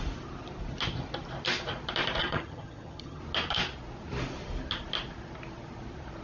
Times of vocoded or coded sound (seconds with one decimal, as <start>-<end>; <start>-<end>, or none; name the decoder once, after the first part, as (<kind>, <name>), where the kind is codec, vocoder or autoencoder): 2.2-3.2 (vocoder, HiFi-GAN)